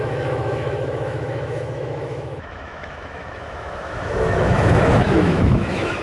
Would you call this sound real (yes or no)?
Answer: no